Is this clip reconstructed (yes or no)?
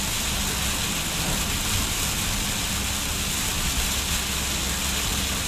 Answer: no